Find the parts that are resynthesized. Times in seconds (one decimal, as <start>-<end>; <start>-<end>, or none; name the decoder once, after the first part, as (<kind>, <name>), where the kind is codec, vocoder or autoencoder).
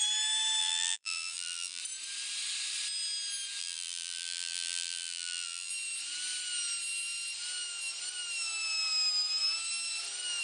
0.6-1.8 (vocoder, BigVGAN v2); 3.6-5.7